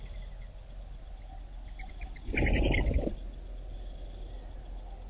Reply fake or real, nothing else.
real